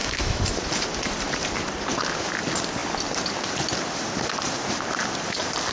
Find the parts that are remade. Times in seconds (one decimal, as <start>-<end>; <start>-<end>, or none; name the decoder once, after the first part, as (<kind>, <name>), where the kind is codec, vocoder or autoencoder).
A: 0.0-0.5 (autoencoder, DAC-VAE)